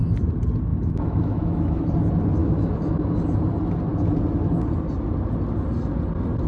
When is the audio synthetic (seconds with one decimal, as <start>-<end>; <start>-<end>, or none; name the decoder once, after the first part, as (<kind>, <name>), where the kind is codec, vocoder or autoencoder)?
0.7-1.8 (autoencoder, DAC-VAE); 2.4-3.2